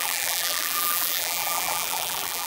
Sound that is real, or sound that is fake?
fake